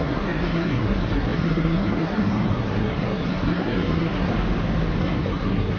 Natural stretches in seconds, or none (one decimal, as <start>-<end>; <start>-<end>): 4.3-5.0